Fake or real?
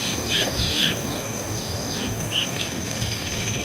fake